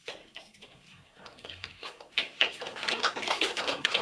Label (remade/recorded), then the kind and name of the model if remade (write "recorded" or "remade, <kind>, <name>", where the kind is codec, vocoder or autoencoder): remade, codec, SNAC